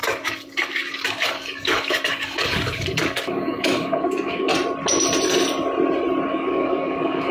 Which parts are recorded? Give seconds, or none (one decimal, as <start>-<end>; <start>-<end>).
4.5-6.3